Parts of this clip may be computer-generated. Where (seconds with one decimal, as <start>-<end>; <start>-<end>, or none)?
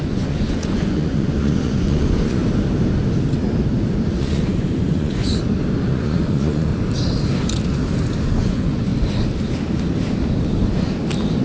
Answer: 0.0-2.4; 4.2-5.3; 5.9-6.7; 8.2-8.9